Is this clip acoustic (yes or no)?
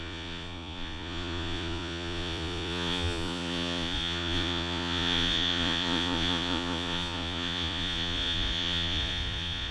no